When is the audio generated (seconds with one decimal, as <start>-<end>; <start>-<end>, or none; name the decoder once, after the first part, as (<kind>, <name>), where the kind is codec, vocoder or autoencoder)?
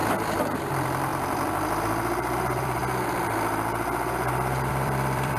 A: 0.7-1.1 (vocoder, BigVGAN v2); 1.8-2.8; 4.7-5.4